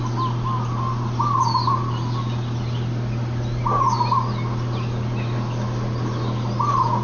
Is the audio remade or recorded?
recorded